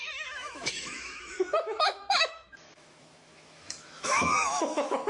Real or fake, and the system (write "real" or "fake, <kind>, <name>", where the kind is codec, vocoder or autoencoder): fake, autoencoder, DAC-VAE